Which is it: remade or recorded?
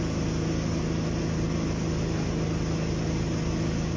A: recorded